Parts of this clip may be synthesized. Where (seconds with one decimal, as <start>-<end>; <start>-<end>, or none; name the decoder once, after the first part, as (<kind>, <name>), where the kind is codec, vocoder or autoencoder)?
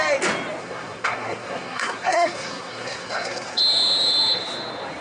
0.6-3.6 (codec, SNAC)